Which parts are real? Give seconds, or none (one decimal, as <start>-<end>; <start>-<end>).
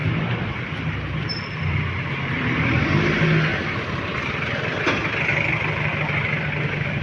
2.8-3.5; 4.8-7.0